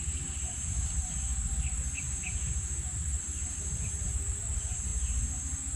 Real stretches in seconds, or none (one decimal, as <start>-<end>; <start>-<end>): none